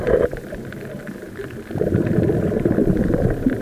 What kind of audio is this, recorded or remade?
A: recorded